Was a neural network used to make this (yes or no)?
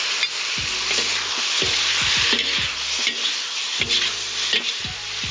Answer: no